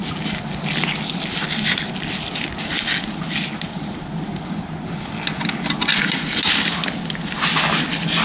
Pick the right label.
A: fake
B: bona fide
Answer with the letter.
B